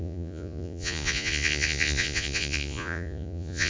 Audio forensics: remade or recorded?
remade